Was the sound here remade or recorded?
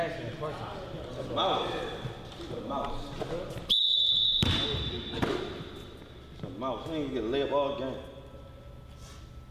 recorded